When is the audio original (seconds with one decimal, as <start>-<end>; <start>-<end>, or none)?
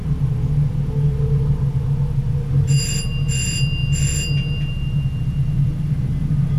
0.0-6.6